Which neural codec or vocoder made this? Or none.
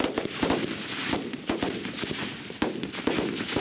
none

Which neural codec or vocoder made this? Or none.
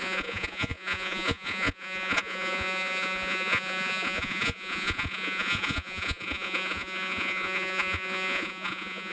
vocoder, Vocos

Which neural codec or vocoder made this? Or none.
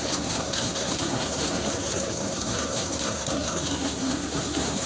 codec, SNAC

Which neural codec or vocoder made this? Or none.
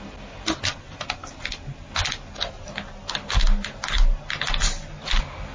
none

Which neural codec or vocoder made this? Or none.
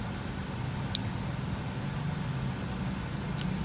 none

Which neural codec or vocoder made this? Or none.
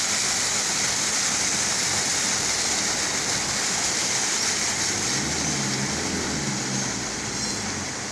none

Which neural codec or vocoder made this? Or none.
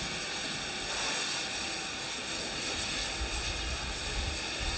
none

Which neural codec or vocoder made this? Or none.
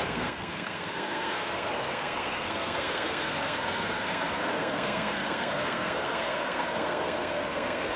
codec, SNAC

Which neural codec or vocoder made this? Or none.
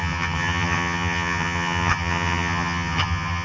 vocoder, HiFi-GAN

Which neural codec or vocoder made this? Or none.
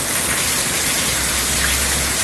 none